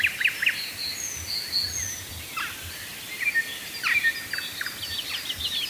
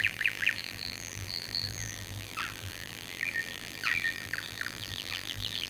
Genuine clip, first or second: first